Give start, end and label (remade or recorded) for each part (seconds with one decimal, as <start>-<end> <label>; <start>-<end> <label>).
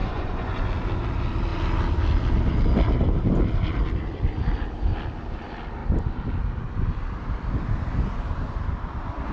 0.0-0.6 remade; 0.6-9.3 recorded